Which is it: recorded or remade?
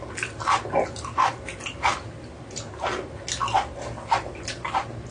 recorded